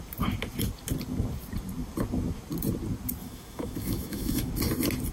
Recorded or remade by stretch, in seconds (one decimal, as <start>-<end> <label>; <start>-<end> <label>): 0.0-3.2 recorded; 3.2-4.5 remade; 4.5-5.1 recorded